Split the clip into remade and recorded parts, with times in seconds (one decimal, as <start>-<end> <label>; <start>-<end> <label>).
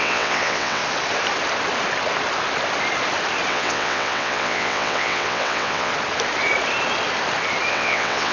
0.0-0.8 remade; 0.8-3.5 recorded; 3.5-5.9 remade; 5.9-7.7 recorded; 7.7-8.3 remade